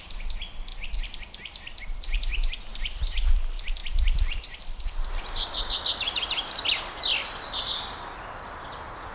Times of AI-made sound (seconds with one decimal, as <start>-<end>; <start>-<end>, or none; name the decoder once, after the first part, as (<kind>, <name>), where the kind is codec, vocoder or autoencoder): 2.7-3.3 (vocoder, BigVGAN v2); 3.8-7.6

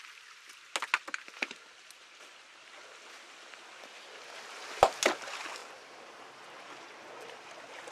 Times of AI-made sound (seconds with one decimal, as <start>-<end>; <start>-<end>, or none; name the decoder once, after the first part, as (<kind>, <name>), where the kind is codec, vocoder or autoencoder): 5.6-7.1 (vocoder, BigVGAN v2)

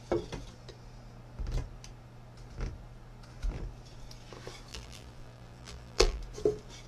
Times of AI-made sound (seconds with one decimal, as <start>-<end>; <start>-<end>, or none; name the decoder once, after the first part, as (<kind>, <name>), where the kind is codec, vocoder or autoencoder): 4.7-6.2 (vocoder, BigVGAN v2)

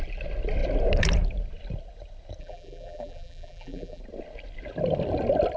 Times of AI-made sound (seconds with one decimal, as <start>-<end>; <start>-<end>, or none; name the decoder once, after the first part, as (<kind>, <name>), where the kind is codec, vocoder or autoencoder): 2.4-4.0 (vocoder, BigVGAN v2)

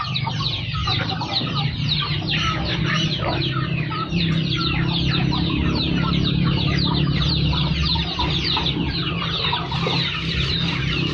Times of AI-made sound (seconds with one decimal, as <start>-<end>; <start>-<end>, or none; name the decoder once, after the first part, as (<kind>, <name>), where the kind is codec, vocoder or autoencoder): 0.8-4.6 (vocoder, BigVGAN v2); 5.2-7.3

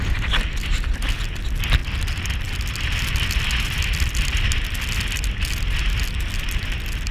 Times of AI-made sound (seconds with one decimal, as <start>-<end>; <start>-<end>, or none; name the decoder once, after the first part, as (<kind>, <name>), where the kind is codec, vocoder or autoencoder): none

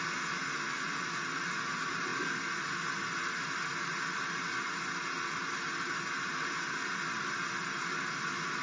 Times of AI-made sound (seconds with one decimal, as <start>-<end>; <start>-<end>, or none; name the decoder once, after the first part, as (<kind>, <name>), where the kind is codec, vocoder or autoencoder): none

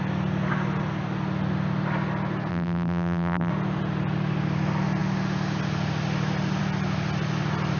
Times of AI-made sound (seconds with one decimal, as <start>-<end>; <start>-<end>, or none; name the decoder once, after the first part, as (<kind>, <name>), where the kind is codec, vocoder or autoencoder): 2.5-3.5 (vocoder, BigVGAN v2)